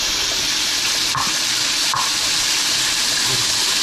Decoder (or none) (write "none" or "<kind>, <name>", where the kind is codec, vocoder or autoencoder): vocoder, BigVGAN v2